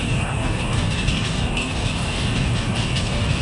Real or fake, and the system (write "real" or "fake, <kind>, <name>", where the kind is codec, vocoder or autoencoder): fake, codec, DAC